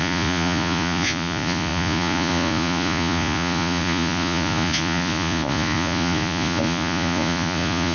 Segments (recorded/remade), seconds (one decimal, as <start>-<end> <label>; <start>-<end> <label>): 0.0-7.9 remade